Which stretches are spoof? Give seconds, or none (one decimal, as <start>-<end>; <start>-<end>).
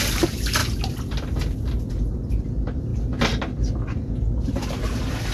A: none